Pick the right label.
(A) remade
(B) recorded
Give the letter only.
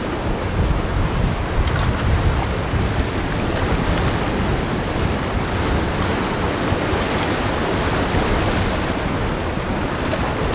B